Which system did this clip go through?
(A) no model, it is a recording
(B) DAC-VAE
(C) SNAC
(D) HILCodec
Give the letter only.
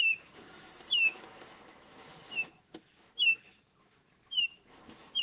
B